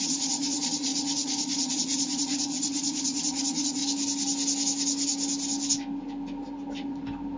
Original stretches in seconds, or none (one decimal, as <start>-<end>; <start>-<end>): 3.8-7.4